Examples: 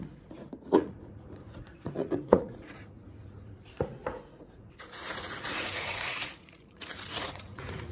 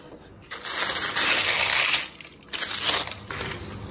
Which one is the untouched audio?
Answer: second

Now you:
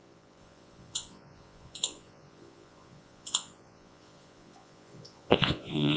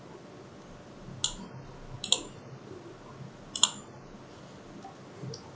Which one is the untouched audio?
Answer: second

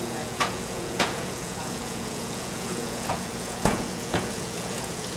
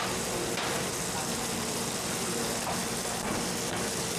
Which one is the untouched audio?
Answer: second